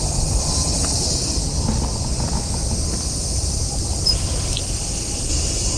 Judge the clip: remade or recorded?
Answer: recorded